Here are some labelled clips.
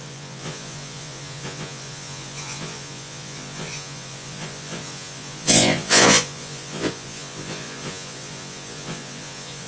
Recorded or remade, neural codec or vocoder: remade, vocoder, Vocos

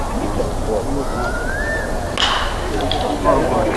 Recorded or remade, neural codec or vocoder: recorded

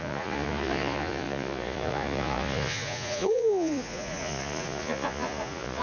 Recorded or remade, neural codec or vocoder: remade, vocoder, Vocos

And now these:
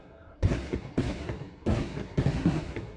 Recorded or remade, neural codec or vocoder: remade, codec, SNAC